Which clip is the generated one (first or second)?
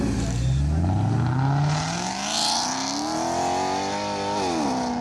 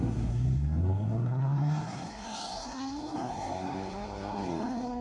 second